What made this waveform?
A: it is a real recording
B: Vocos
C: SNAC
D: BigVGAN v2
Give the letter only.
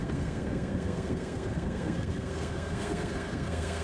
C